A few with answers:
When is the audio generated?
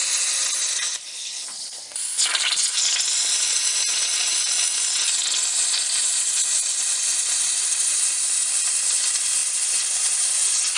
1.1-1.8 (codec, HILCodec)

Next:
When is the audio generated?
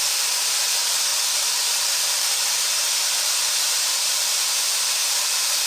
0.0-5.7 (vocoder, BigVGAN v2)